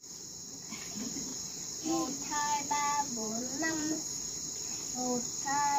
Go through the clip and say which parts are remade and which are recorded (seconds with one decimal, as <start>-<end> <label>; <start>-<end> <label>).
0.0-1.3 recorded; 1.3-4.8 remade; 4.8-5.8 recorded